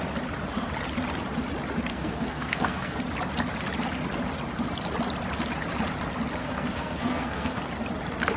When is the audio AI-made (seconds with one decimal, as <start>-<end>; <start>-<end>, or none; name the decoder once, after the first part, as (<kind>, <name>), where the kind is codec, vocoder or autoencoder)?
1.9-3.0 (codec, SNAC); 6.4-7.6